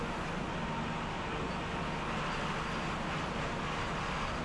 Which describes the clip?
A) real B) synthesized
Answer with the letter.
A